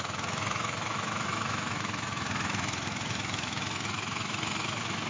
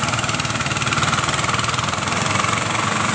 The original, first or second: second